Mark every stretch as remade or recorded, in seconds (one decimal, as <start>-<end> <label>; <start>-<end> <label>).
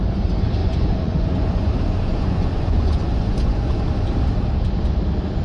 0.0-0.6 recorded; 0.6-3.8 remade; 3.8-5.4 recorded